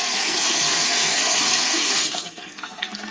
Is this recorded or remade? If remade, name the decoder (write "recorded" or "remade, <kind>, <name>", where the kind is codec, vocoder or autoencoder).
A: remade, codec, SNAC